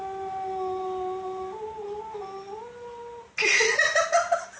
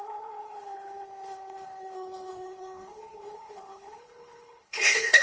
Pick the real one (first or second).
first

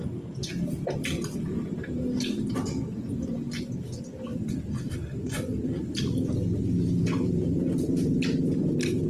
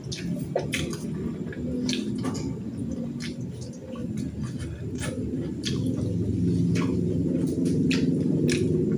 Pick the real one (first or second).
second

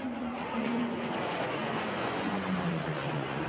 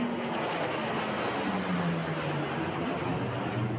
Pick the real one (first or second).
second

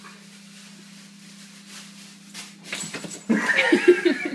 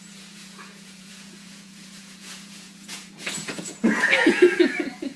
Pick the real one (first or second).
first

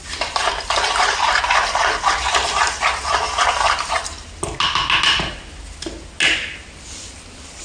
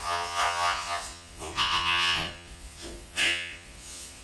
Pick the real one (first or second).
first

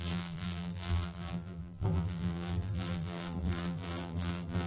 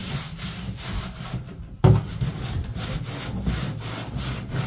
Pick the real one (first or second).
second